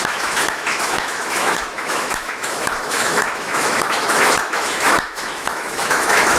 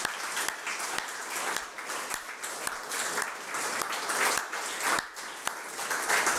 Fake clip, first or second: first